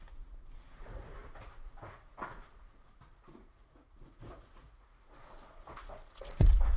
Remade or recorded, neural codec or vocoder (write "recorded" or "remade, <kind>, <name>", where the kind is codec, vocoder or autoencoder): remade, vocoder, Vocos